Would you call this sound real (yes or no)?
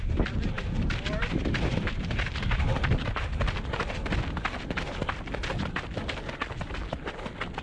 yes